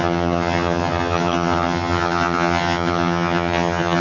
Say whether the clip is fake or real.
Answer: fake